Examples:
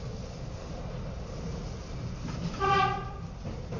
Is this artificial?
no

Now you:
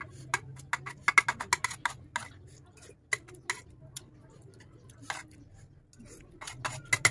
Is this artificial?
no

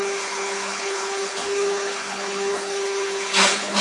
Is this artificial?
yes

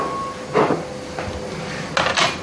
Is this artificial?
no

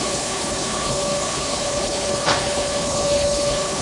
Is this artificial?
yes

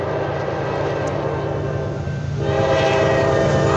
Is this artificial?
no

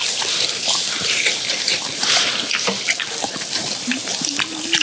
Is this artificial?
no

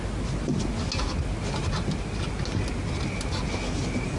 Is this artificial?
no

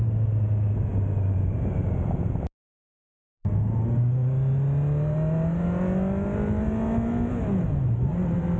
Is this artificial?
no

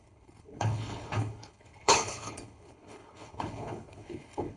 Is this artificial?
yes